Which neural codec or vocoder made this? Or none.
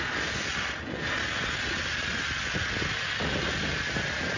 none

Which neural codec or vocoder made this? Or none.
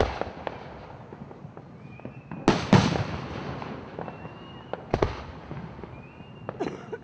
none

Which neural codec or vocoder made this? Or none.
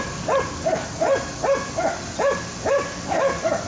none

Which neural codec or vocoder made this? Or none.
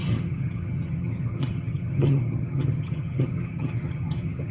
vocoder, HiFi-GAN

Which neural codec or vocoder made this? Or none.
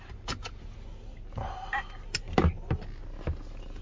none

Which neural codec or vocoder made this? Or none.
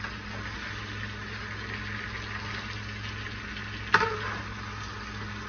none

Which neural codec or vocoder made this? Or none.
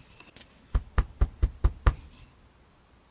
none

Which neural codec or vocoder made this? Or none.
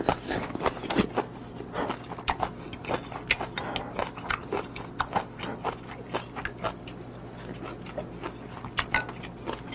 none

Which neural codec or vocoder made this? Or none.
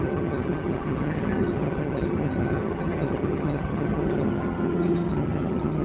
vocoder, HiFi-GAN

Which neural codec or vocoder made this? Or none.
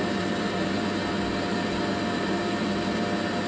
none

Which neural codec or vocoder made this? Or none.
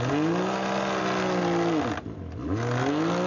none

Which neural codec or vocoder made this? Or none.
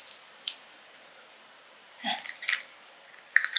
none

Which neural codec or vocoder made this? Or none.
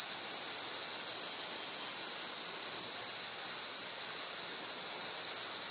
none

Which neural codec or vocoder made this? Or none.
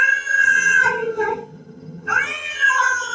vocoder, HiFi-GAN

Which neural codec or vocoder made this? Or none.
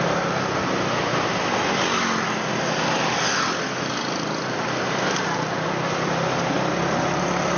none